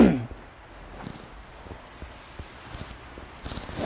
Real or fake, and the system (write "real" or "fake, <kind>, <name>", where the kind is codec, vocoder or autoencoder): real